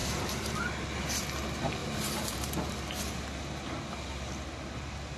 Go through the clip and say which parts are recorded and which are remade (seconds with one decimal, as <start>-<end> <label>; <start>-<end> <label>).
0.0-0.6 remade; 0.6-1.8 recorded; 1.8-3.0 remade; 3.0-5.2 recorded